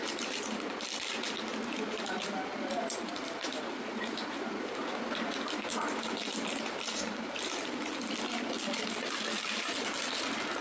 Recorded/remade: recorded